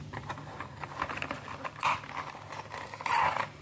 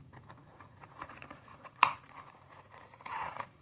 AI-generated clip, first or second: second